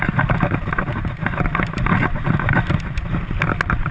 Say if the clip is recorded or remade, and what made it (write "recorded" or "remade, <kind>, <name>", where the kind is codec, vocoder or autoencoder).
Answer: recorded